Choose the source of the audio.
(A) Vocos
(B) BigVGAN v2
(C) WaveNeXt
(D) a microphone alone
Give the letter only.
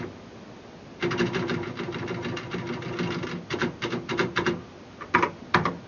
D